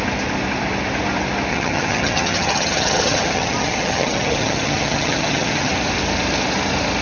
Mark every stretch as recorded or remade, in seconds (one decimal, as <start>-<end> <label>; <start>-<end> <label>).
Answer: 0.0-1.5 recorded; 1.5-5.7 remade; 5.7-7.0 recorded